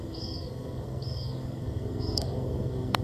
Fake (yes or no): yes